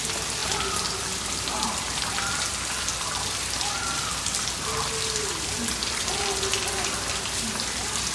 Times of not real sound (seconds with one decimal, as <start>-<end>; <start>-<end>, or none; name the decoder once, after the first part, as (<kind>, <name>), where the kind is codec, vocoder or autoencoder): none